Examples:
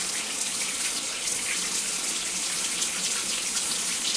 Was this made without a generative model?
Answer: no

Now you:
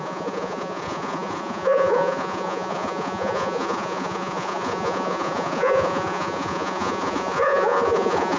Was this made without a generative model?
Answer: no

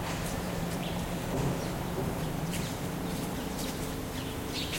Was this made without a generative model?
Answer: no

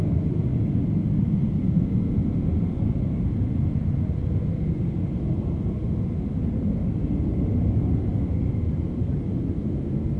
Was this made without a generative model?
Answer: yes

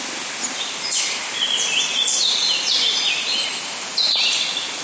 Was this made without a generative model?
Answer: yes